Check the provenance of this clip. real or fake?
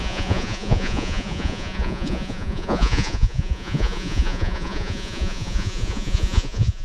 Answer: fake